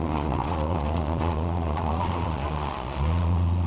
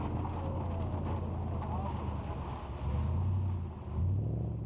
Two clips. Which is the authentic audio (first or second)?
second